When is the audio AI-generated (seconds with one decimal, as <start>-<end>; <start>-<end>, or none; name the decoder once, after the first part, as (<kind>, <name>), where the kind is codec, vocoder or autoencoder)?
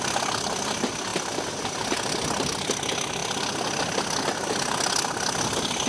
none